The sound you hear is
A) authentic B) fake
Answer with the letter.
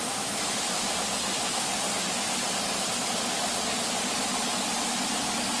A